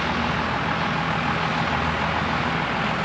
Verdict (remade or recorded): recorded